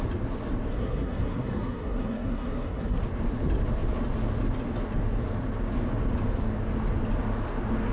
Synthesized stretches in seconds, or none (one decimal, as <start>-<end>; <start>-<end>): 0.7-3.0